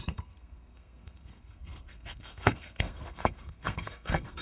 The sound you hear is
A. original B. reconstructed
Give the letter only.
B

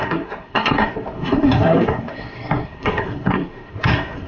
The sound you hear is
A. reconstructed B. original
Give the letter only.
A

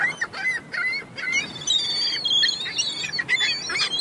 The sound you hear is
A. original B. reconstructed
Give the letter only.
A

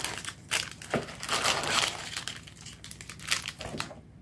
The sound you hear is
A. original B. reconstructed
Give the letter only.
A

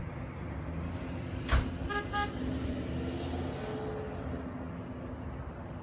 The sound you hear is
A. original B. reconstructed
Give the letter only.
A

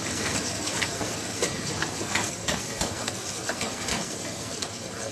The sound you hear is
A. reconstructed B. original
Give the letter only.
A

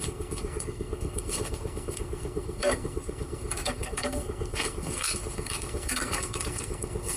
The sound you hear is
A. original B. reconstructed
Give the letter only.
B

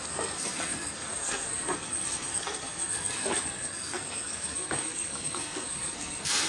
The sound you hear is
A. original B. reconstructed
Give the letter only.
B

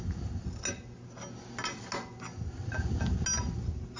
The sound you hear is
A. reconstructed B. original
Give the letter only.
B